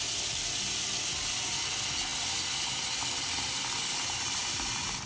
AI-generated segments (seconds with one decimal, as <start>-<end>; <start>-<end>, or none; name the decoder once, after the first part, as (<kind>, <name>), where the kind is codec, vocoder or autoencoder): none